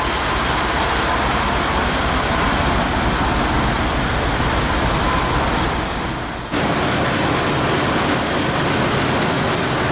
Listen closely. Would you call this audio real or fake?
real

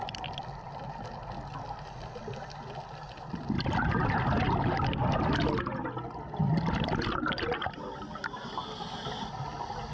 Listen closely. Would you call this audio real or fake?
real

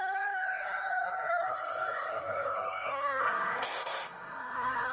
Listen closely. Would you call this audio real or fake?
fake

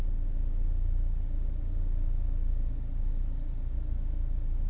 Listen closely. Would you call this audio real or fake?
real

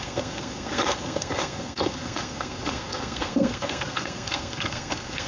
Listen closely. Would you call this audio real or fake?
fake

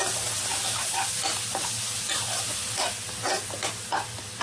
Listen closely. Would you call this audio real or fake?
real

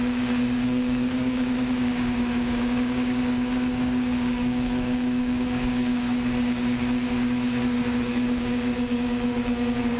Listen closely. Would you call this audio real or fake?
fake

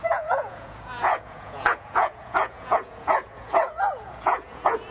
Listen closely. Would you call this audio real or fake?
fake